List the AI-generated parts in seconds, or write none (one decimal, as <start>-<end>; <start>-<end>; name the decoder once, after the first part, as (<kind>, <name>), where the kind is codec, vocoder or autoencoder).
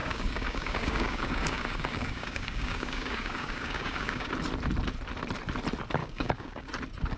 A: 0.0-4.3 (codec, DAC); 6.0-6.7